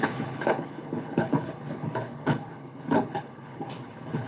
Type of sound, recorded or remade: remade